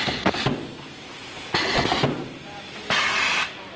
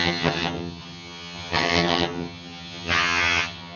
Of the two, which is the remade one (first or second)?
second